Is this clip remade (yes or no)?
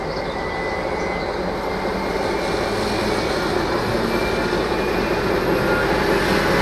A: no